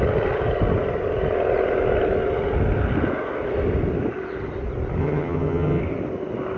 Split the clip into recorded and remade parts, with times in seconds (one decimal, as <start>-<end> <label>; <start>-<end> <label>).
0.0-5.0 recorded; 5.0-5.8 remade; 5.8-6.6 recorded